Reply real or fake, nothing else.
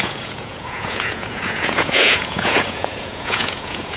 fake